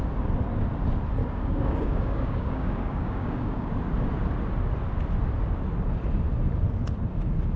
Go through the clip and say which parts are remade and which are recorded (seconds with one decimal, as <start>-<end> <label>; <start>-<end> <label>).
0.0-1.2 recorded; 1.2-3.7 remade; 3.7-7.6 recorded